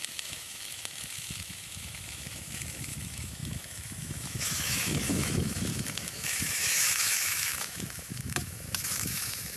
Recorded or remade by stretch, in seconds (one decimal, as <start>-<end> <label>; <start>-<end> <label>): 0.0-9.6 remade